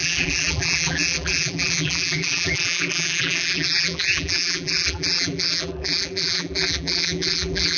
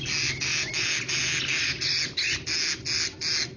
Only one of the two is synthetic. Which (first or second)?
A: first